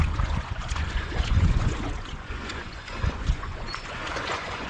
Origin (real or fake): fake